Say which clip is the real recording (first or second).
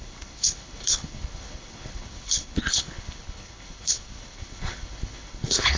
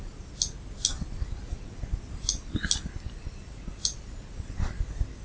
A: second